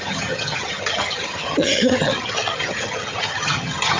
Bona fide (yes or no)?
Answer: no